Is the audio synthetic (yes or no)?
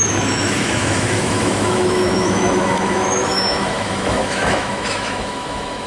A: yes